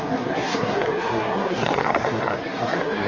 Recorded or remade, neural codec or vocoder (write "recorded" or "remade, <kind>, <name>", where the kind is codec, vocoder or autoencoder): remade, codec, SNAC